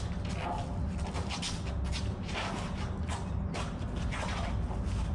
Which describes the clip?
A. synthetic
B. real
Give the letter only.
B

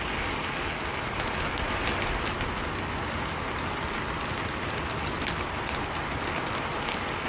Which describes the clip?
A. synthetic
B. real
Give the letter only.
B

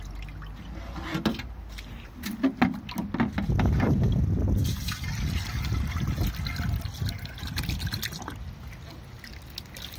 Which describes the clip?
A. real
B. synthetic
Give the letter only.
A